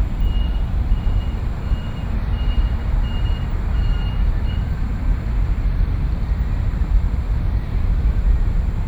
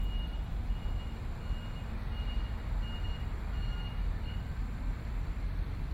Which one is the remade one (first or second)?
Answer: first